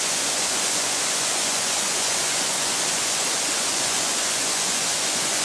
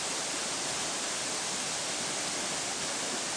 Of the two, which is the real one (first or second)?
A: second